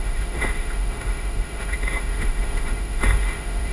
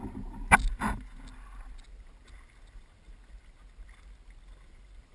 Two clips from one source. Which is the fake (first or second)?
first